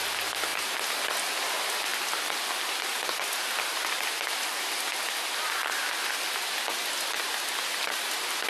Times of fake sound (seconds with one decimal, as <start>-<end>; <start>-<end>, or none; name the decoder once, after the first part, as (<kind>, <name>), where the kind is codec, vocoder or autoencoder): none